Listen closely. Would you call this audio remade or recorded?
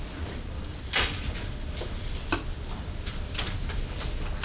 remade